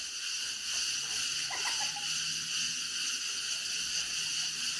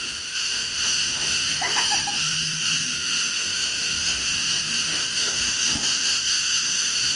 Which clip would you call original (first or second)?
first